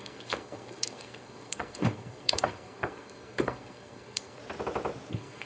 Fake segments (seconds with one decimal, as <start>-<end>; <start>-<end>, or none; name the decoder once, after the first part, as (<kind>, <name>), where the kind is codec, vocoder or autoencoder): 0.0-4.4 (codec, SNAC); 5.1-5.5